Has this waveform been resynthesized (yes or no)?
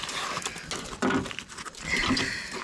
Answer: no